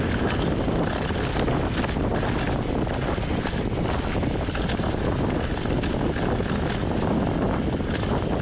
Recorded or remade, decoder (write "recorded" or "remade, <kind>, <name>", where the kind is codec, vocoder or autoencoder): recorded